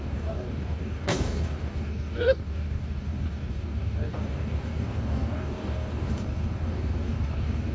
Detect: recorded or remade remade